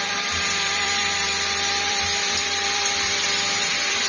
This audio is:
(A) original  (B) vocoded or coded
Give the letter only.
B